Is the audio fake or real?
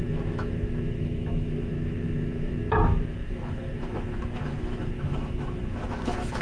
fake